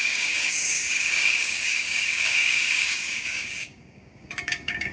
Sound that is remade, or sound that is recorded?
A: remade